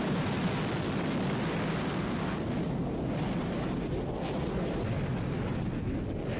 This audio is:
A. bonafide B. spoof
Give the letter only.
A